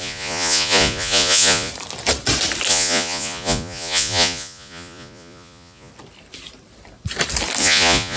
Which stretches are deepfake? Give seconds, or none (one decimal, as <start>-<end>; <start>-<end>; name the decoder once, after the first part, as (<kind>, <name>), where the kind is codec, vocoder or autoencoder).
0.0-1.7 (vocoder, Vocos); 2.7-5.9; 7.6-8.2